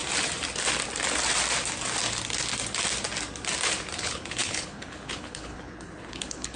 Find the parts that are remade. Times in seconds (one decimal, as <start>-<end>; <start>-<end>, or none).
4.0-6.6